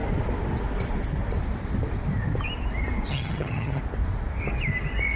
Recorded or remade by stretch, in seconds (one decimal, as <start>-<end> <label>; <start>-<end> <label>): 0.0-3.1 recorded; 3.1-3.8 remade; 3.8-5.2 recorded